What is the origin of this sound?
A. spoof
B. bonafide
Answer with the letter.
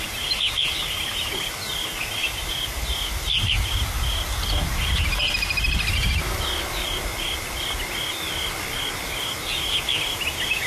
B